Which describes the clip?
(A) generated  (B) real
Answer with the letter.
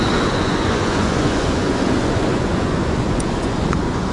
A